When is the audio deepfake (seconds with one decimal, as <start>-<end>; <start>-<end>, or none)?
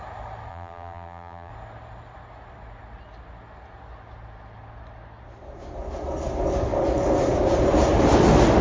0.5-1.5